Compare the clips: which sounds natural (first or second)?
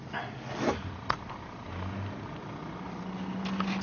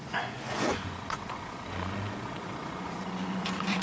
first